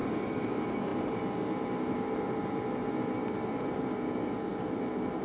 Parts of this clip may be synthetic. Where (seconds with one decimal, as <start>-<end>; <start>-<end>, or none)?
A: 0.0-5.2